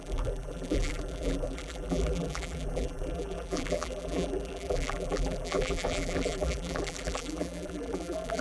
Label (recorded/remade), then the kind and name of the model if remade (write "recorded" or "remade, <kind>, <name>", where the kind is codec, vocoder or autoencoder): remade, vocoder, BigVGAN v2